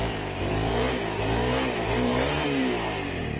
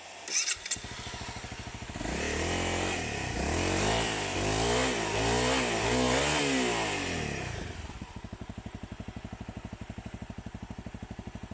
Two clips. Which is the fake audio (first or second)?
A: first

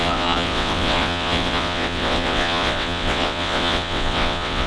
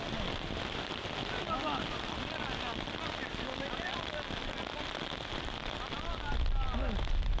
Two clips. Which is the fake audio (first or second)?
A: first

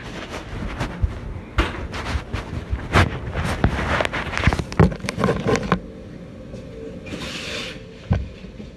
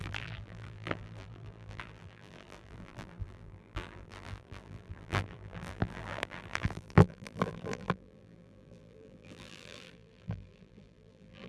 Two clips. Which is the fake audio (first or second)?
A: second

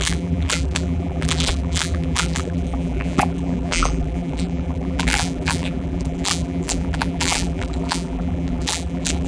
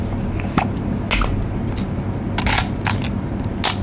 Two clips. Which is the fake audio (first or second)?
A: first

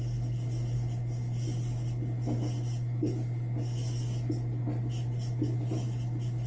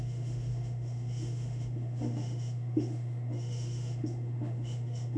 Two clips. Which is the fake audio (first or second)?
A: second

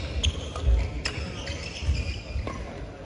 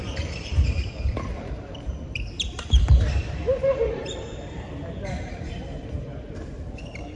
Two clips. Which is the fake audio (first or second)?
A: second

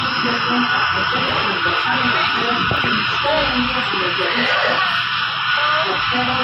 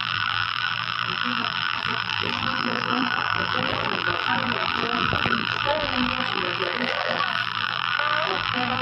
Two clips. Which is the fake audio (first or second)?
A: second